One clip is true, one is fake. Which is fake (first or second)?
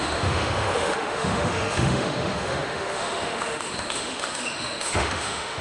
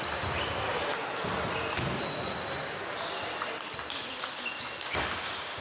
first